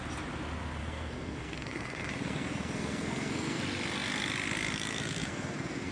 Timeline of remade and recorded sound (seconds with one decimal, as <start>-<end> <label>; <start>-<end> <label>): 0.0-0.8 recorded; 0.8-3.6 remade; 3.6-4.9 recorded; 4.9-5.9 remade